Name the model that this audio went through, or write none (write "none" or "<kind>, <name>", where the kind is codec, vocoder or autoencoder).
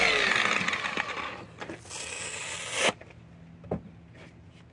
none